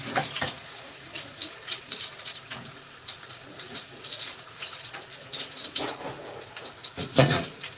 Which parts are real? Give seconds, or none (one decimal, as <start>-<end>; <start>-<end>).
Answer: none